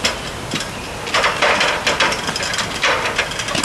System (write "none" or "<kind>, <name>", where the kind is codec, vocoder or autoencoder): none